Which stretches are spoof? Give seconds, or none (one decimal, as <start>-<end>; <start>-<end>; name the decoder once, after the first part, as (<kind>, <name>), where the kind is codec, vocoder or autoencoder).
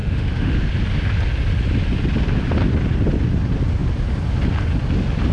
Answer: 0.0-0.7 (autoencoder, DAC-VAE)